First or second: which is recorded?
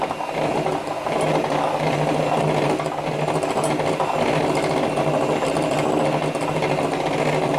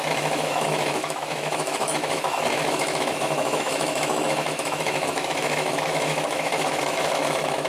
first